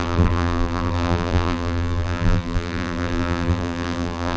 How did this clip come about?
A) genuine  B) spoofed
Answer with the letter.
B